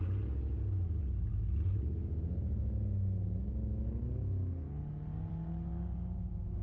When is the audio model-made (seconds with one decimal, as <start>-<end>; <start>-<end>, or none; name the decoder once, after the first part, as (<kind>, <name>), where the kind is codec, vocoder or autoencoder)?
none